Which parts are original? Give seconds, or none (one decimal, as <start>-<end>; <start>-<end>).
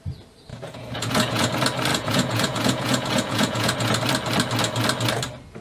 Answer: 0.0-0.5; 1.5-1.9; 4.0-5.6